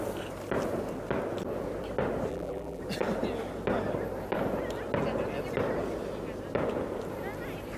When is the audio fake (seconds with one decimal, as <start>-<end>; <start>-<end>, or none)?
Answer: 2.3-2.8